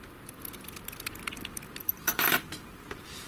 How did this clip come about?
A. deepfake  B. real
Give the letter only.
A